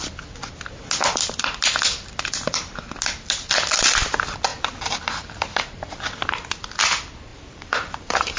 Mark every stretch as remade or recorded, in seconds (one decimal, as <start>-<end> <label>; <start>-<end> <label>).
0.0-4.5 recorded; 4.5-6.0 remade; 6.0-7.3 recorded; 7.3-8.4 remade